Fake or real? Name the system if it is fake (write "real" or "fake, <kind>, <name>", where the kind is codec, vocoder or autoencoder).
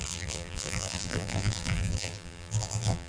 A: fake, vocoder, BigVGAN v2